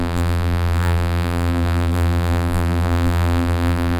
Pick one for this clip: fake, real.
fake